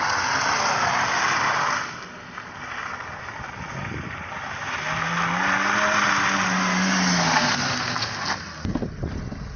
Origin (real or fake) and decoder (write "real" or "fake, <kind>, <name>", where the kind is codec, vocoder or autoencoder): real